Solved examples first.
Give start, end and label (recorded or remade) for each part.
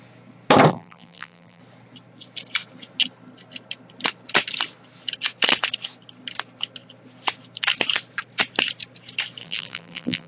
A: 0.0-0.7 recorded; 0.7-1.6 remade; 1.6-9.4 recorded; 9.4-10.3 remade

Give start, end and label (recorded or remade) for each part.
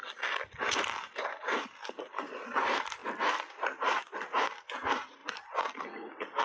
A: 0.0-0.6 recorded; 0.6-3.0 remade; 3.0-3.5 recorded; 3.5-5.2 remade; 5.2-6.4 recorded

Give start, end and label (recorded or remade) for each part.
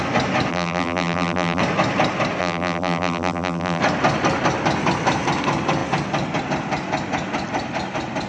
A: 0.0-0.5 recorded; 0.5-1.6 remade; 1.6-2.4 recorded; 2.4-3.8 remade; 3.8-8.3 recorded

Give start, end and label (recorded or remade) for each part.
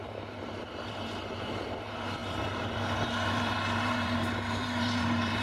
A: 0.0-5.4 remade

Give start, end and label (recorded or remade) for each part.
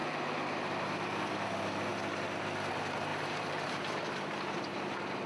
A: 0.0-3.1 recorded; 3.1-4.4 remade; 4.4-5.3 recorded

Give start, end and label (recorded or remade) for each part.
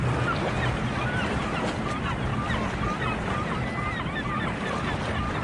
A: 0.0-5.4 recorded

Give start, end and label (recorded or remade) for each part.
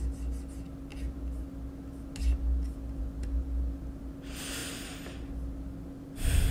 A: 0.0-6.5 recorded